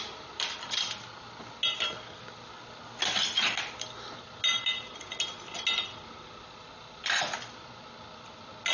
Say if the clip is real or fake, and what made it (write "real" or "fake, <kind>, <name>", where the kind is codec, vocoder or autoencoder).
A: real